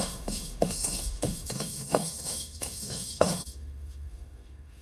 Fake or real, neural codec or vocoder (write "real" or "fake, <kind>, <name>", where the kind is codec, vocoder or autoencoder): fake, autoencoder, DAC-VAE